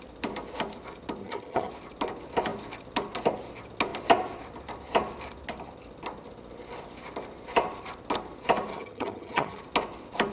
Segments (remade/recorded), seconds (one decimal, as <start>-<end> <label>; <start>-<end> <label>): 0.0-1.2 recorded; 1.2-1.7 remade; 1.7-8.7 recorded; 8.7-9.6 remade; 9.6-10.3 recorded